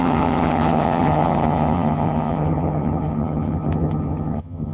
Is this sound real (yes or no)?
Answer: no